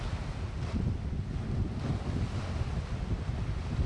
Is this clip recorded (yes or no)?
yes